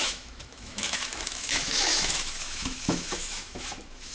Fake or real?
fake